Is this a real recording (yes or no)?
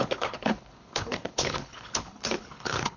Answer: no